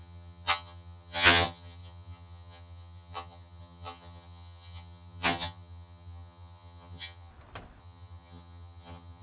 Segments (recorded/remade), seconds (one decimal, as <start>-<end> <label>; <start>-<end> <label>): 0.0-7.3 remade; 7.3-7.8 recorded; 7.8-9.2 remade